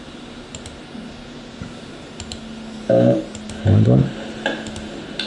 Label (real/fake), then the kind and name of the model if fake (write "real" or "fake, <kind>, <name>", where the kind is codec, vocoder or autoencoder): real